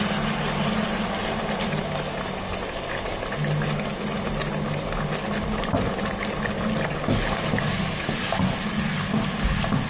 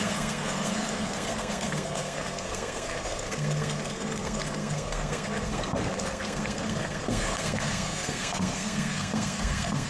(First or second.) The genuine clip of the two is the first